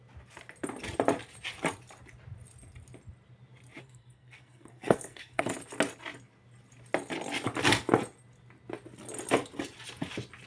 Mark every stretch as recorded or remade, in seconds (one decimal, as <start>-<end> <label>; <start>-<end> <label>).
0.0-3.8 recorded; 3.8-5.5 remade; 5.5-10.5 recorded